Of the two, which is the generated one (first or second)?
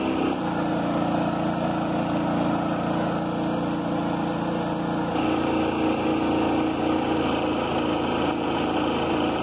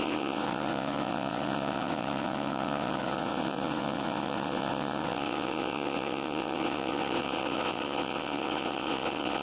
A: second